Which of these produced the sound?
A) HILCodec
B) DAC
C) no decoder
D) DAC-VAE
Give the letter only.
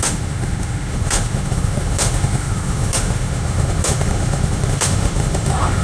D